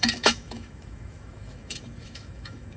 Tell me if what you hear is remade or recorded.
remade